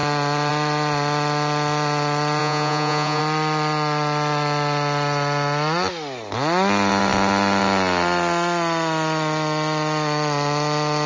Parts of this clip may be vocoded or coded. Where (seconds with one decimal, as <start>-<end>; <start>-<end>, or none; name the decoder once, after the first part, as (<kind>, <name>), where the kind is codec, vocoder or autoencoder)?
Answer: 2.4-3.2 (vocoder, Vocos)